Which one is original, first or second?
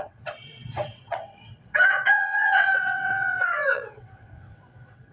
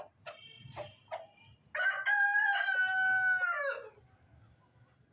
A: second